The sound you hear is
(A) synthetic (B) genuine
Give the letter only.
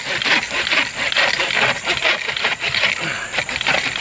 B